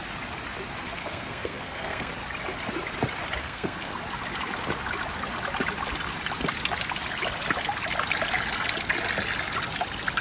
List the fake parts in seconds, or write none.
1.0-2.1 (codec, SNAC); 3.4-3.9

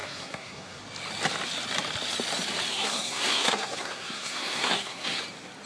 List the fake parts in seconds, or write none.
0.0-0.8 (codec, SNAC); 2.7-5.2

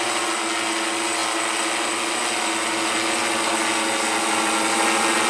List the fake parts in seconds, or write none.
none

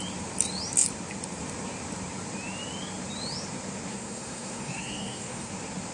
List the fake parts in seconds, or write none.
3.9-5.5 (codec, SNAC)

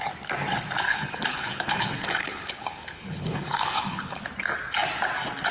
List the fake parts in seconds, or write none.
0.9-4.2 (codec, HILCodec)

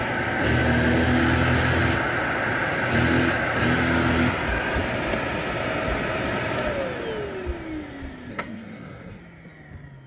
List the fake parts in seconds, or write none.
8.3-9.2 (codec, SNAC)